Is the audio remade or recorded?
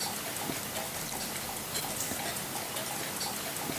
recorded